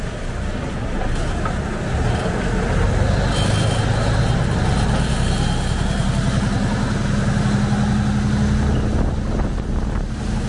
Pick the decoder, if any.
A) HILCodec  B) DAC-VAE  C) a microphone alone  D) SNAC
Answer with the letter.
C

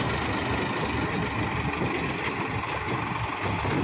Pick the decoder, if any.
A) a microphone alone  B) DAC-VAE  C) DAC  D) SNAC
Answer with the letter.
A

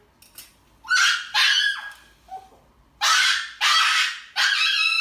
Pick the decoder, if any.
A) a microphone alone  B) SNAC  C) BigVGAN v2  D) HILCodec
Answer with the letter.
A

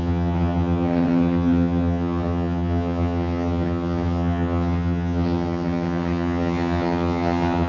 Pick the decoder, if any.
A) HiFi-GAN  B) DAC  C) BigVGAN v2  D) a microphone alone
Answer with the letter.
A